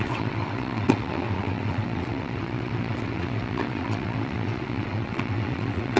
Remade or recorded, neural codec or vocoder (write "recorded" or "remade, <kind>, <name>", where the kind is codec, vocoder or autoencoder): remade, vocoder, WaveNeXt